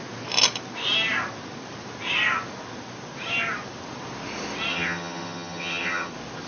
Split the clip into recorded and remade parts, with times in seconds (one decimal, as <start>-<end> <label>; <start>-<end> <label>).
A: 0.0-4.7 recorded; 4.7-6.1 remade; 6.1-6.5 recorded